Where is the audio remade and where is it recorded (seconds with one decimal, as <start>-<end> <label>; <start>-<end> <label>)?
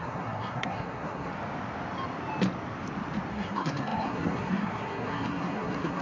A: 0.0-1.3 remade; 1.3-3.3 recorded; 3.3-6.0 remade